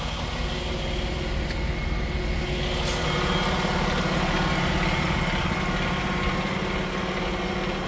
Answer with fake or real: real